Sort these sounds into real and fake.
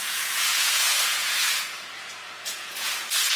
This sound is fake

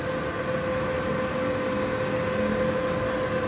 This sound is real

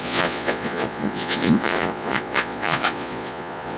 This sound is fake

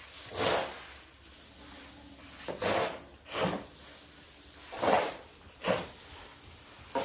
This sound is real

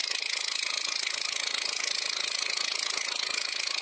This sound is real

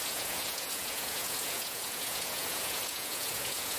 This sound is fake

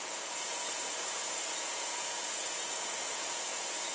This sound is fake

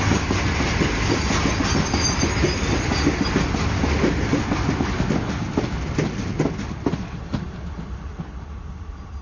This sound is real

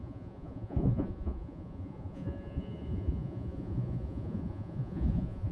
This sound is fake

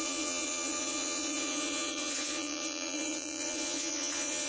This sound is fake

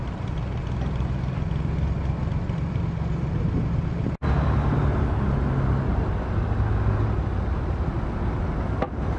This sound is real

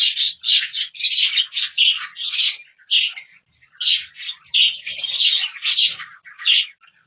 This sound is real